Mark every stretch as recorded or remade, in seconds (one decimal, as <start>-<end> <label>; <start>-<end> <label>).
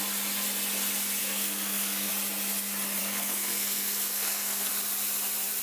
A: 0.0-1.2 recorded; 1.2-2.1 remade; 2.1-3.0 recorded; 3.0-4.7 remade; 4.7-5.6 recorded